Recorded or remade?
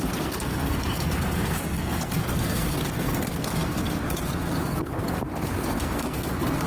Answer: remade